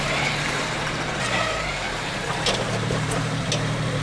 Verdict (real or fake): fake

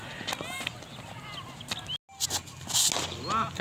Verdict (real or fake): real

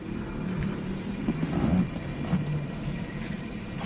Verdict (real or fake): fake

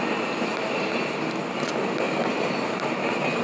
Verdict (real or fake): real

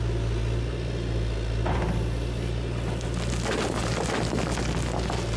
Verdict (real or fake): real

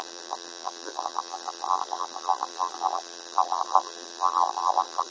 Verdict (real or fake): fake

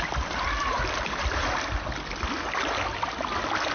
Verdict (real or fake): real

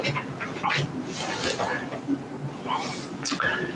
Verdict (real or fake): real